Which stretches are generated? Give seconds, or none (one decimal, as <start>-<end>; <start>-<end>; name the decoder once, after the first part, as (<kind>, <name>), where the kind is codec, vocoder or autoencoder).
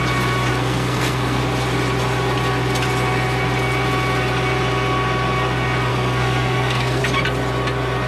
0.5-1.4 (codec, SNAC); 5.9-7.0